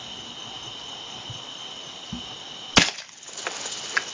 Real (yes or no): yes